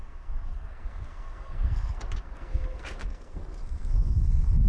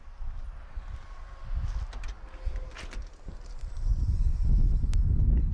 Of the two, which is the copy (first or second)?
first